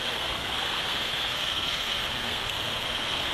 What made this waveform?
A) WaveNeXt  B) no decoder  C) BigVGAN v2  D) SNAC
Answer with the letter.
D